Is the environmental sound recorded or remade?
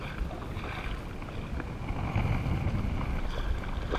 recorded